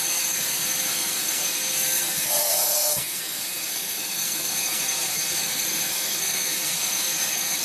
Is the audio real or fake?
fake